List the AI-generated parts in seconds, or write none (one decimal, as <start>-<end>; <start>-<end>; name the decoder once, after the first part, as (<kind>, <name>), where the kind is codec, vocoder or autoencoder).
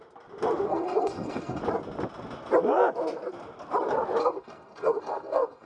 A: 0.7-1.6 (codec, SNAC); 4.2-5.7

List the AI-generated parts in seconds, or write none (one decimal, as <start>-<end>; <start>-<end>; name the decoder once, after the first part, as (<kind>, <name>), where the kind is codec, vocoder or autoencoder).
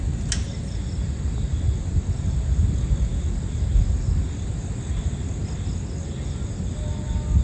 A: none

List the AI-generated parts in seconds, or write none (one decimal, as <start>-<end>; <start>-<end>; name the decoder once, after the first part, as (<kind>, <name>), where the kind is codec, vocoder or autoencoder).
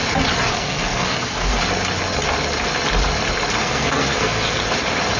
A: 0.5-1.6 (codec, SNAC); 3.6-4.6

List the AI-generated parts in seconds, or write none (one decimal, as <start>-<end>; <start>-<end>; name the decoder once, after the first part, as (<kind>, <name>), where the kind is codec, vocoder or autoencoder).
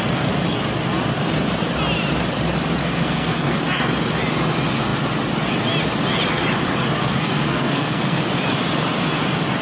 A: 2.8-3.6 (codec, SNAC); 7.0-8.2